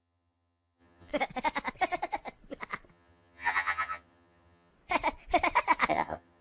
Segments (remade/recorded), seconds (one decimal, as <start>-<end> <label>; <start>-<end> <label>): 0.0-1.1 remade; 1.1-2.9 recorded; 2.9-4.7 remade; 4.7-5.9 recorded; 5.9-6.4 remade